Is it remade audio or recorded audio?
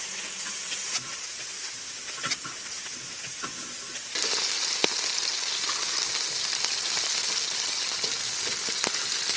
recorded